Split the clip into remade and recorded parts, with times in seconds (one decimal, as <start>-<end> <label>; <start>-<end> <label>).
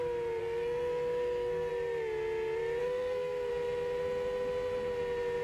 0.0-0.4 recorded; 0.4-1.7 remade; 1.7-2.8 recorded; 2.8-3.5 remade; 3.5-5.4 recorded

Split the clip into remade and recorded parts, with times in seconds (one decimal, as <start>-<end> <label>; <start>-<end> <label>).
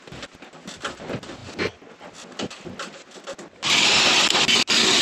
0.0-5.0 recorded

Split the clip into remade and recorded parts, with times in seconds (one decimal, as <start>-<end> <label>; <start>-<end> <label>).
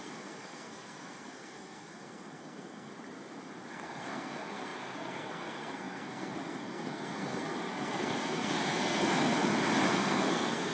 0.0-2.9 remade; 2.9-3.7 recorded; 3.7-9.4 remade; 9.4-9.9 recorded; 9.9-10.7 remade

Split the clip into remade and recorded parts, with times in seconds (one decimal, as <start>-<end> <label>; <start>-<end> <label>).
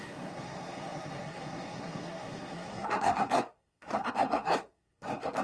0.0-5.4 remade